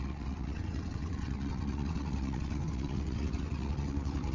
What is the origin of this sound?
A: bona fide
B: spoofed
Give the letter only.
B